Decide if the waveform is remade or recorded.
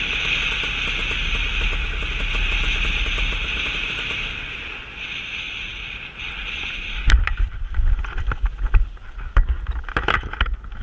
recorded